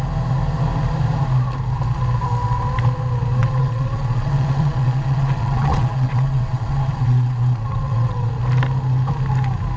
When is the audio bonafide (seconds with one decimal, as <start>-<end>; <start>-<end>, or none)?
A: 0.0-3.4; 8.3-9.8